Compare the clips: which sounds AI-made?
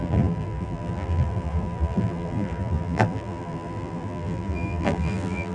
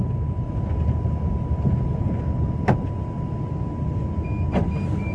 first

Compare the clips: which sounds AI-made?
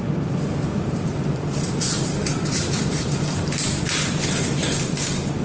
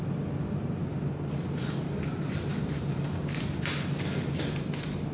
first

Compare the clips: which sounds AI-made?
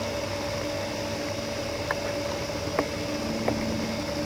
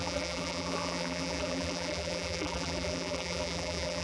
second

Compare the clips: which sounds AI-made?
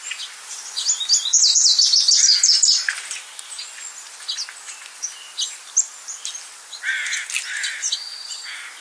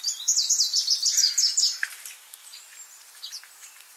second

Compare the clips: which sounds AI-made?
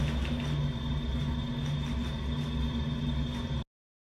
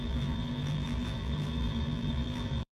second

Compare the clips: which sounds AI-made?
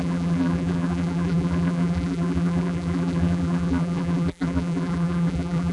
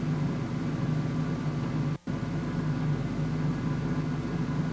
first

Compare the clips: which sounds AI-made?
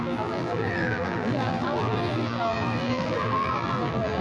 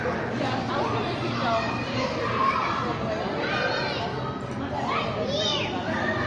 first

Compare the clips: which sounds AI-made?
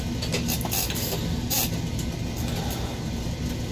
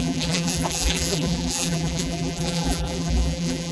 second